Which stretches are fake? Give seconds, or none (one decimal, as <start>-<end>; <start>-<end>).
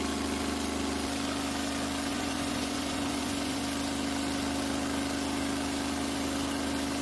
2.1-3.6